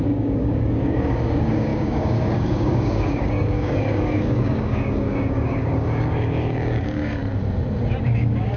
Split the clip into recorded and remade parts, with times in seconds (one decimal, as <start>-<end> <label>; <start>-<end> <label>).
0.0-7.2 remade; 7.2-8.0 recorded; 8.0-8.6 remade